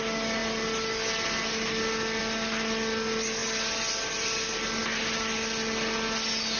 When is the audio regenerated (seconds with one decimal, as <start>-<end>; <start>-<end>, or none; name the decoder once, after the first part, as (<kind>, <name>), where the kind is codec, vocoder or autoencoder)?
none